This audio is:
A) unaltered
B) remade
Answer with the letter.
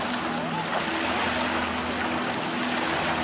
A